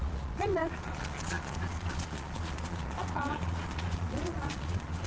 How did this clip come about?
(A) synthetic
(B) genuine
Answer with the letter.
A